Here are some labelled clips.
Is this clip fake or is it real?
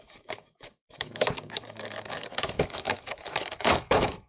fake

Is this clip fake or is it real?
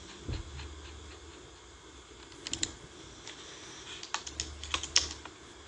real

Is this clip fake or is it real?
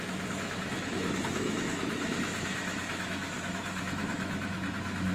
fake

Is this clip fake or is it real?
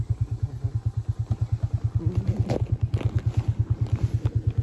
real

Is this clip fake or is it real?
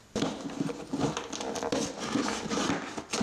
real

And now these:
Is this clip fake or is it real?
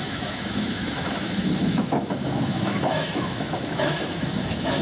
fake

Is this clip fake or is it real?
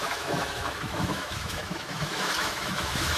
fake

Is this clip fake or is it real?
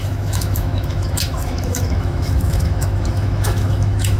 fake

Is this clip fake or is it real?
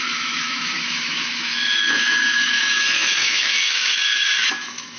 fake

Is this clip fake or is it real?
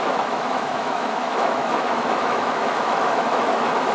fake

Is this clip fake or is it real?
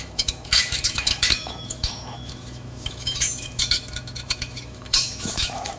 fake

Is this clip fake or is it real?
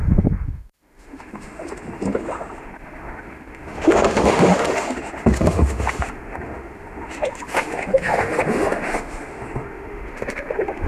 fake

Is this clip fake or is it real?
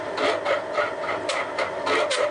real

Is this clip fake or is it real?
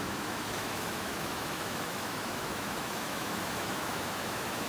fake